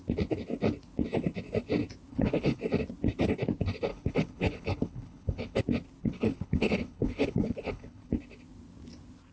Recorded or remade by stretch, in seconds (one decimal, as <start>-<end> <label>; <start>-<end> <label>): 0.0-2.1 recorded; 2.1-2.6 remade; 2.6-3.9 recorded; 3.9-5.6 remade; 5.6-6.0 recorded; 6.0-8.1 remade; 8.1-9.3 recorded